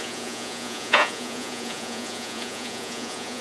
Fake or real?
fake